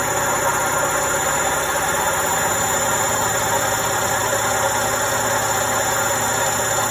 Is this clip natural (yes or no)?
yes